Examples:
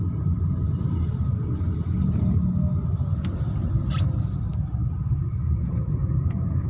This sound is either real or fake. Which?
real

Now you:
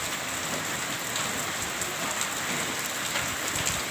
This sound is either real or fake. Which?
real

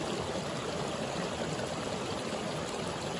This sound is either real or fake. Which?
real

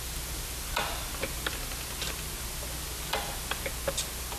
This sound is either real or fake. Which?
real